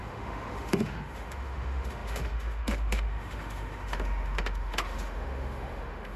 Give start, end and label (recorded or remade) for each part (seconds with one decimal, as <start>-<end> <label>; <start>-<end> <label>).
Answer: 0.0-6.2 remade